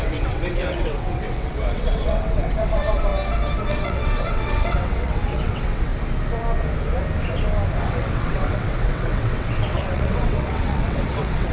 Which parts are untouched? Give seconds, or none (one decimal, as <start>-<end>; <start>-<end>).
3.1-3.7; 5.9-7.8